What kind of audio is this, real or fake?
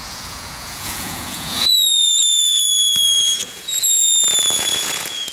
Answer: fake